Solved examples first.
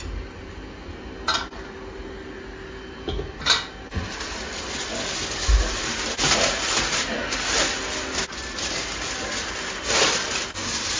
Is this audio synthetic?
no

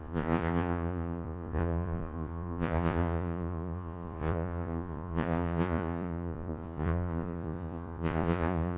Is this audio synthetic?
yes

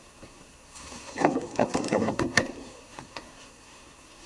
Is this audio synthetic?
yes